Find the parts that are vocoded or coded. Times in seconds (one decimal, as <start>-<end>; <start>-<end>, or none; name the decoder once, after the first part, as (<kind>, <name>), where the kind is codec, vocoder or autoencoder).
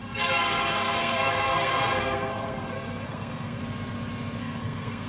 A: 0.0-3.6 (codec, SNAC); 4.4-5.1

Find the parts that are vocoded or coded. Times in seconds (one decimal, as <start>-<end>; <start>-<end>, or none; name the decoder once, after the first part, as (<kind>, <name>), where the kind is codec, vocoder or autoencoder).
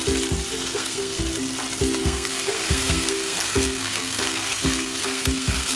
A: 0.5-1.2 (codec, SNAC); 2.0-5.8